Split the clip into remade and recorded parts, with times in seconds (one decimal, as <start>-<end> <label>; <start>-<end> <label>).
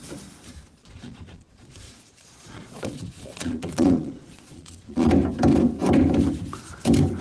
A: 0.0-0.8 recorded; 0.8-5.1 remade; 5.1-7.2 recorded